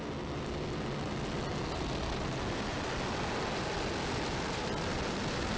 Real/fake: real